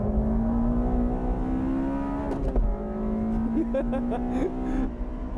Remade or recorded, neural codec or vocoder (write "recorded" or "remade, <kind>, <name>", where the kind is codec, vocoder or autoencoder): recorded